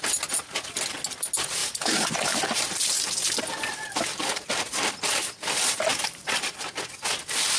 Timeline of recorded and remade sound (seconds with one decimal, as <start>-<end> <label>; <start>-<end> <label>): 0.0-1.6 recorded; 1.6-2.6 remade; 2.6-5.9 recorded; 5.9-6.5 remade; 6.5-7.6 recorded